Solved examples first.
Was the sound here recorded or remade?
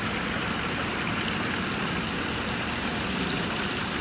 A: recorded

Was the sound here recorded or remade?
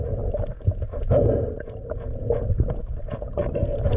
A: recorded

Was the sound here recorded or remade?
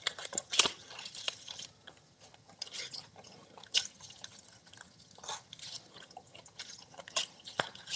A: remade